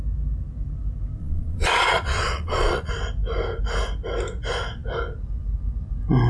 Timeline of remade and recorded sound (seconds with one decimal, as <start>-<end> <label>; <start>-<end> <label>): 0.0-1.2 recorded; 1.2-2.9 remade; 2.9-6.3 recorded